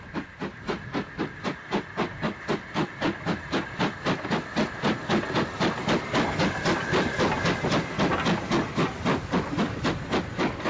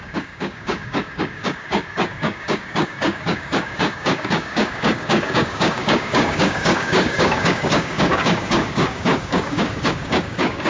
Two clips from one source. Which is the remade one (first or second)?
second